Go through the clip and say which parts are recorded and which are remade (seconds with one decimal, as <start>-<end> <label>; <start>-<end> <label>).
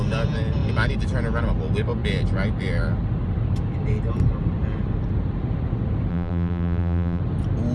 0.0-6.1 recorded; 6.1-7.2 remade; 7.2-7.7 recorded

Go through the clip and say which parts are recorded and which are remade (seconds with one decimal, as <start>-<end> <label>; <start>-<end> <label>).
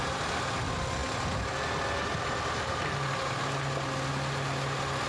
0.0-5.1 recorded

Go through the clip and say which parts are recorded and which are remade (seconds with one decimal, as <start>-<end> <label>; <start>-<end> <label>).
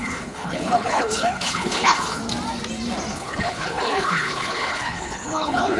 0.0-2.2 remade; 2.2-3.1 recorded; 3.1-5.8 remade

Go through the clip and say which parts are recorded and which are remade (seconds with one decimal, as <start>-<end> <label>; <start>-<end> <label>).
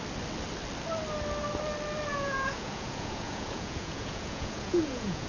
0.0-2.1 recorded; 2.1-5.3 remade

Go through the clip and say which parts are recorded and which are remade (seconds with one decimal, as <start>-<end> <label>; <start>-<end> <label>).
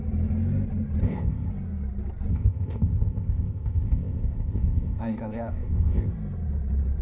0.0-1.0 recorded; 1.0-1.5 remade; 1.5-2.3 recorded; 2.3-6.1 remade; 6.1-7.0 recorded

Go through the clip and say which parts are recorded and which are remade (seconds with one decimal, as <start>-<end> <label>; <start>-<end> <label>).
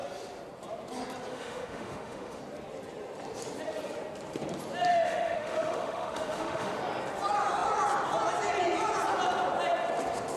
0.0-1.3 recorded; 1.3-2.4 remade; 2.4-4.9 recorded; 4.9-6.8 remade; 6.8-10.4 recorded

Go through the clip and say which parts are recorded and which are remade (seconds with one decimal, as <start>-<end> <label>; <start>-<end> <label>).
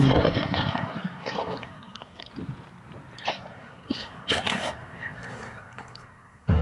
0.0-2.3 remade; 2.3-3.3 recorded; 3.3-6.6 remade